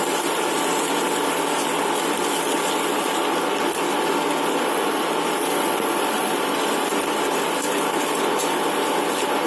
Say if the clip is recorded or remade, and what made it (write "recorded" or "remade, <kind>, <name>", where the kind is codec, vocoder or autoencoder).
recorded